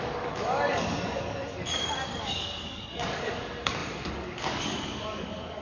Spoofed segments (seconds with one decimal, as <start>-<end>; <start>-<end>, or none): 0.0-5.6